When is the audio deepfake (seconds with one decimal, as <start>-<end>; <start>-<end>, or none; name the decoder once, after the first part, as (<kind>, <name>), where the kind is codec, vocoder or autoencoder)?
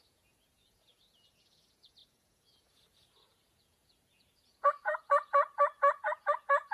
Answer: 0.0-6.7 (vocoder, Vocos)